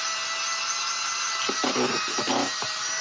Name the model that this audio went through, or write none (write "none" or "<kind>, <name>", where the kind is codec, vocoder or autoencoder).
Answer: none